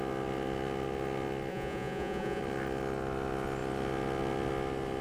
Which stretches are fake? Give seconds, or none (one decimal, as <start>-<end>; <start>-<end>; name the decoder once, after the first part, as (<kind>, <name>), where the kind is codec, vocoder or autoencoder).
1.5-2.4 (vocoder, Vocos)